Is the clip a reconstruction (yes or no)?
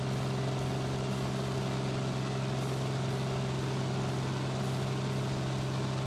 no